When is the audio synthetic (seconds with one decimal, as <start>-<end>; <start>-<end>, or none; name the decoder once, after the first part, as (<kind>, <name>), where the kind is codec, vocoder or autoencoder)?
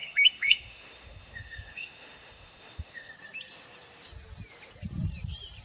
0.0-3.1 (autoencoder, DAC-VAE)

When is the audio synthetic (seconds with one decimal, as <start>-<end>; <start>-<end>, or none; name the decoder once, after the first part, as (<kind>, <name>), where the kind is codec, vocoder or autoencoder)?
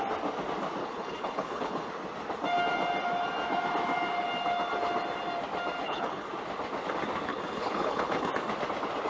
0.8-1.9 (codec, HILCodec); 5.8-6.3; 7.3-8.3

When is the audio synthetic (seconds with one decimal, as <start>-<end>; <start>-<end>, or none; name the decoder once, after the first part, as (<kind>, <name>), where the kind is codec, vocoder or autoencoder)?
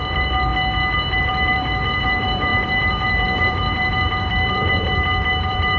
0.0-0.5 (vocoder, BigVGAN v2); 1.2-5.8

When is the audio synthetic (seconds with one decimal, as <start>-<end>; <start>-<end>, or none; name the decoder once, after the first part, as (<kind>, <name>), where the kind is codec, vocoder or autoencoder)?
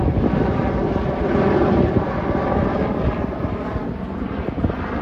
none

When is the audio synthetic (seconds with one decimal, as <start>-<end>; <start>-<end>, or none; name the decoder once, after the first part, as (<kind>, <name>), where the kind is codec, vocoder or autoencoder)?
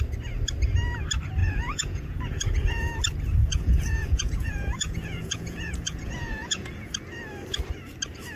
1.4-3.0 (vocoder, Vocos); 3.4-6.9